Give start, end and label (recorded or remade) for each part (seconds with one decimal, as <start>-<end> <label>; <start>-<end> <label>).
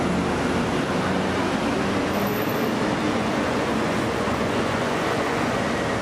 0.0-3.0 recorded; 3.0-5.6 remade; 5.6-6.0 recorded